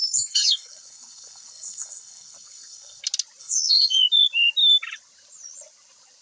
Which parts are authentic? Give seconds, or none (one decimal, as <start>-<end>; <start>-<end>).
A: 3.0-3.4; 4.0-6.2